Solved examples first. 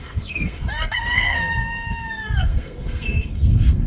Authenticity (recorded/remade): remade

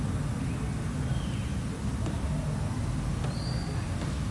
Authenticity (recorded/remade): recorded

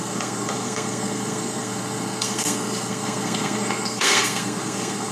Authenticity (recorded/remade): remade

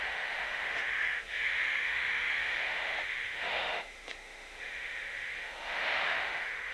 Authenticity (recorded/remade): remade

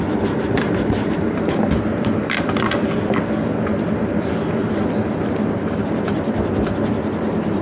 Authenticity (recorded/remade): remade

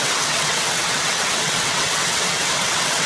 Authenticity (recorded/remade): remade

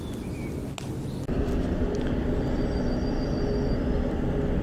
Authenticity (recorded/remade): recorded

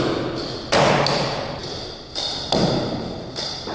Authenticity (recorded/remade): recorded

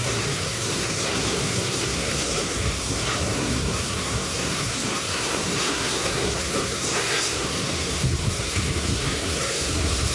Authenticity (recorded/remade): remade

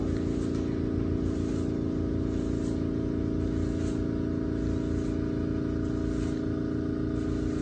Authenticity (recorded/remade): recorded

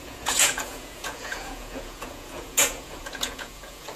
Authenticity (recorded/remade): remade